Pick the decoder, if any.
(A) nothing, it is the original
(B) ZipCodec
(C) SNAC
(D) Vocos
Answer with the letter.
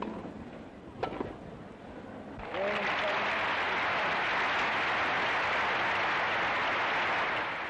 A